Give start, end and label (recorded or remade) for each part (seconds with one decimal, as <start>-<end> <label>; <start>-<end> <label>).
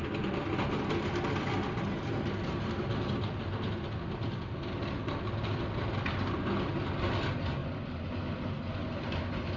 0.0-9.6 recorded